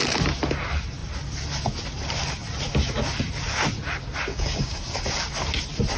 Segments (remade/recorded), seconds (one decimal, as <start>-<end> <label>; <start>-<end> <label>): 0.0-4.3 recorded; 4.3-4.8 remade; 4.8-6.0 recorded